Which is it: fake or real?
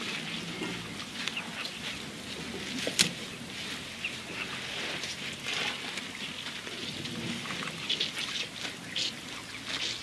real